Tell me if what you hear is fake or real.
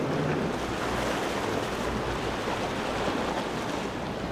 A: real